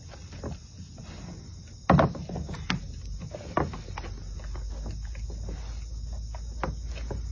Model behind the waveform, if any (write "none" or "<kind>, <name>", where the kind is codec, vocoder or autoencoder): none